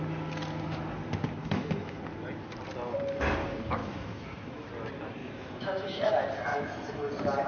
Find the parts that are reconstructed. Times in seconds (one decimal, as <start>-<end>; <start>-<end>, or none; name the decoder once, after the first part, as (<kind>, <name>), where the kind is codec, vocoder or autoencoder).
1.4-2.0 (autoencoder, DAC-VAE); 3.8-4.7; 5.2-6.1; 6.5-7.1